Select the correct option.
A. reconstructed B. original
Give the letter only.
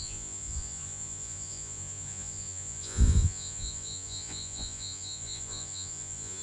A